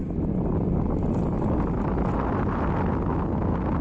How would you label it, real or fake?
real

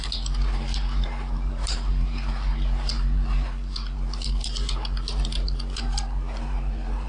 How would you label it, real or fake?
fake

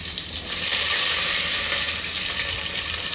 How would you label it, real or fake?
real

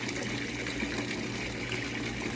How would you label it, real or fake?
real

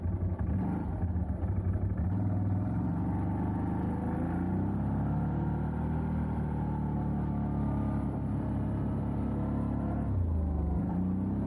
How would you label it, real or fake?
real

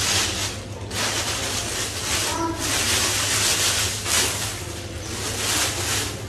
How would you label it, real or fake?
real